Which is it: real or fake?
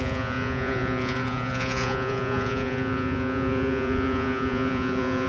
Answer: fake